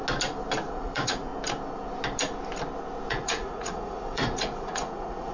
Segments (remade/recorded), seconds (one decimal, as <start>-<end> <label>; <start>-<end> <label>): 0.0-0.7 recorded; 0.7-1.3 remade; 1.3-3.1 recorded; 3.1-5.3 remade